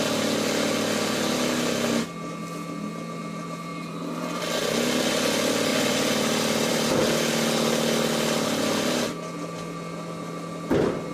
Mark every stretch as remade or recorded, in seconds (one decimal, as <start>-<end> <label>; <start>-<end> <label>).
0.0-3.7 recorded; 3.7-4.4 remade; 4.4-5.7 recorded; 5.7-6.9 remade; 6.9-11.1 recorded